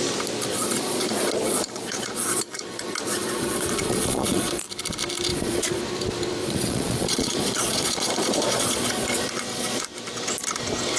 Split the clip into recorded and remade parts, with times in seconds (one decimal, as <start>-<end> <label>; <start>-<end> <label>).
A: 0.0-0.5 recorded; 0.5-4.6 remade; 4.6-5.3 recorded; 5.3-5.8 remade; 5.8-6.4 recorded; 6.4-9.8 remade; 9.8-11.0 recorded